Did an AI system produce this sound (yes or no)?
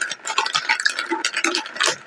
no